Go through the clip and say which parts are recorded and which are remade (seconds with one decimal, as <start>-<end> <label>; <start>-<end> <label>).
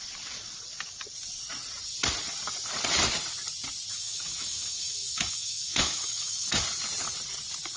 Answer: 0.0-3.9 recorded; 3.9-6.6 remade; 6.6-7.8 recorded